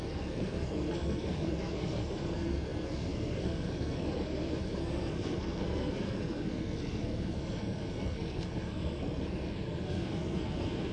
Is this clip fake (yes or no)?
yes